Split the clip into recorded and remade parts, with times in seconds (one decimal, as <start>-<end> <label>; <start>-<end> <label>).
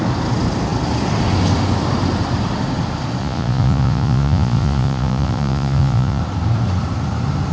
0.0-3.2 recorded; 3.2-6.2 remade; 6.2-7.5 recorded